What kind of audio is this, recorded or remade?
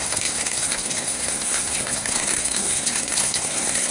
remade